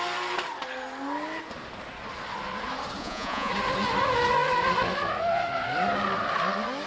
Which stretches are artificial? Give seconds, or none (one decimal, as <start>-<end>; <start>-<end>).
3.0-3.5